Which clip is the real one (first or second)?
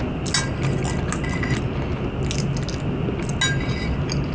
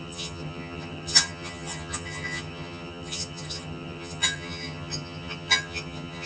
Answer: first